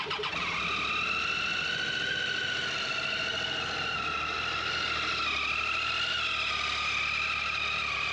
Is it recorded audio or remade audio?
recorded